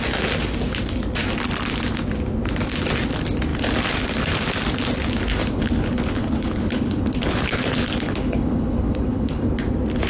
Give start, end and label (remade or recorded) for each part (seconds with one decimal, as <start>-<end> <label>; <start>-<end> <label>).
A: 0.0-5.4 recorded; 5.4-9.5 remade; 9.5-10.1 recorded